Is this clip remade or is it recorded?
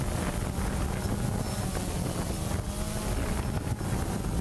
recorded